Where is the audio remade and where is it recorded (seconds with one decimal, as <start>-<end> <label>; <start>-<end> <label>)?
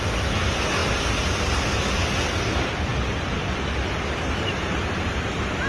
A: 0.0-5.7 recorded